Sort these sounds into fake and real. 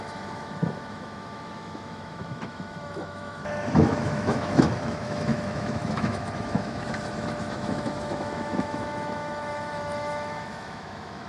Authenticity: fake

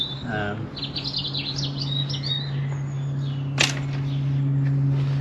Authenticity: real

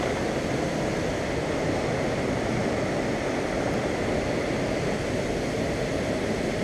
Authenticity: real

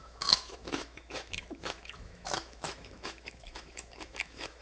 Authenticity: fake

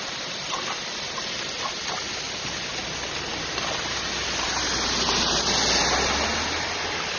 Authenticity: real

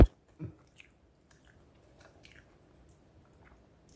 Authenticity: real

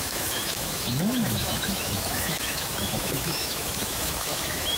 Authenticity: fake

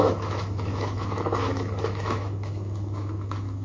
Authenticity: fake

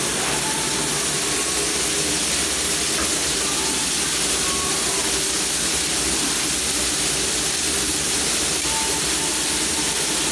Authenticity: real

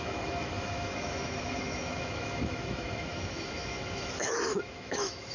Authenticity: fake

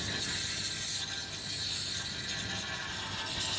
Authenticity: real